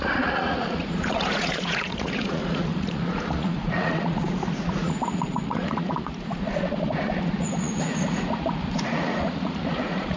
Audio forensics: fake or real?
fake